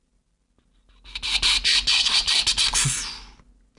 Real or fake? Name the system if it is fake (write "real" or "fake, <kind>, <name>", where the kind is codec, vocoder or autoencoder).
real